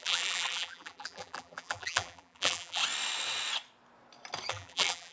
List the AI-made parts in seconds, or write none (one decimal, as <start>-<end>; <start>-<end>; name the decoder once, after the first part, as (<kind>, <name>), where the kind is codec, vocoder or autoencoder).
0.0-2.8 (vocoder, BigVGAN v2); 4.5-5.1